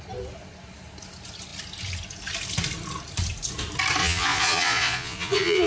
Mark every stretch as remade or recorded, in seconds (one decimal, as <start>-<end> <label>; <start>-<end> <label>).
0.0-4.0 recorded; 4.0-5.7 remade